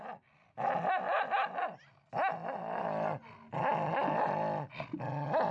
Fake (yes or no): no